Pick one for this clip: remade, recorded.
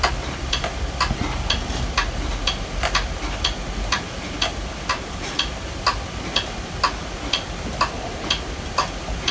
recorded